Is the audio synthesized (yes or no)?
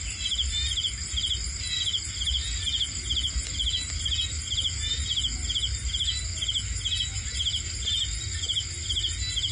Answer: no